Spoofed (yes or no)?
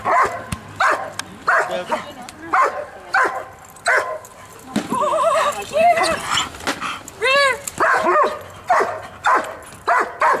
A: no